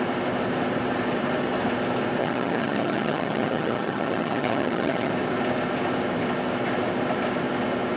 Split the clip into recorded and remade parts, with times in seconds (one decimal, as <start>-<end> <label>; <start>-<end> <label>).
0.0-2.2 recorded; 2.2-5.1 remade; 5.1-8.0 recorded